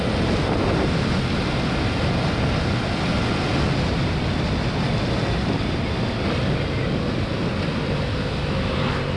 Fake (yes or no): no